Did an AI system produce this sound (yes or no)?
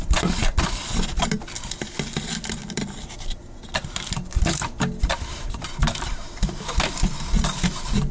no